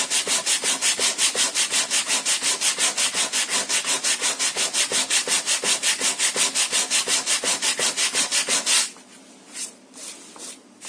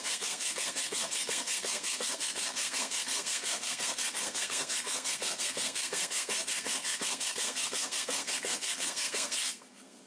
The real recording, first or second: first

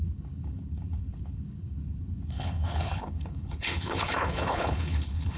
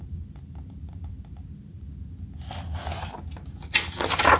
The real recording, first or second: second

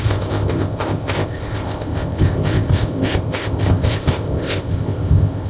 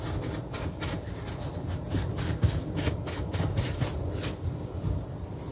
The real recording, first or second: second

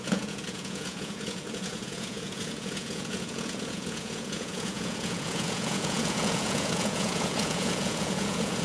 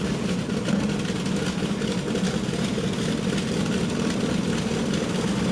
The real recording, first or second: second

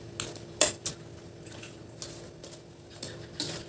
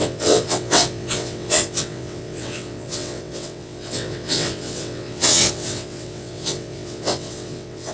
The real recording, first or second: first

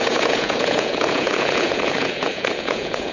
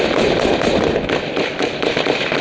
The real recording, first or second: second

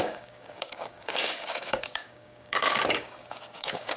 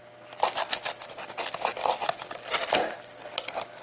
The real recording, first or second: second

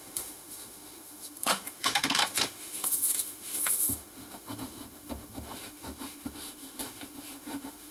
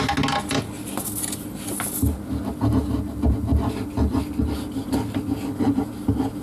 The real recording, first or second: second